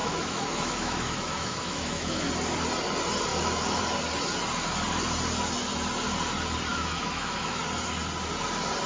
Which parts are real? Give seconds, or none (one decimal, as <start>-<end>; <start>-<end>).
2.3-3.3; 3.8-6.7; 7.6-8.9